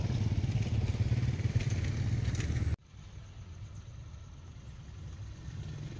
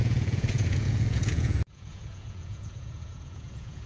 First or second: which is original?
first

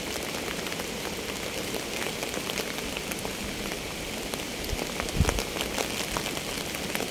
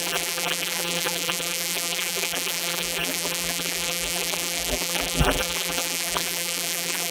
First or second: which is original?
first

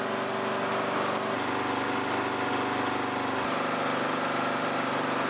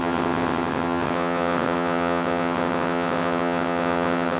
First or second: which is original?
first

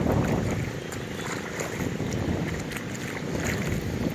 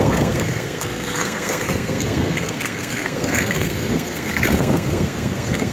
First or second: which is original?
first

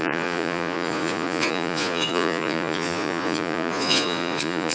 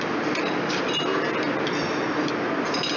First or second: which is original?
second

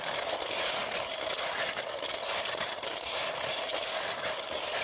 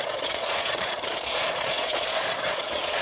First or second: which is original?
first